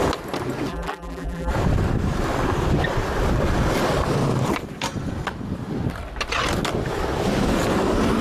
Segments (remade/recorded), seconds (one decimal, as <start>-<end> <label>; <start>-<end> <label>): 0.0-0.7 recorded; 0.7-1.5 remade; 1.5-8.2 recorded